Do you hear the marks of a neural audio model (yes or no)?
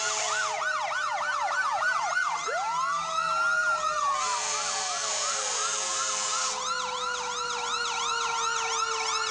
no